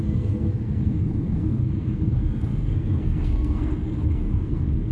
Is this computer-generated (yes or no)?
yes